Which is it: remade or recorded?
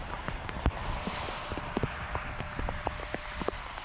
remade